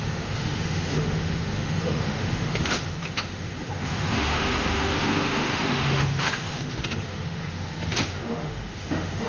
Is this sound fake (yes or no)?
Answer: yes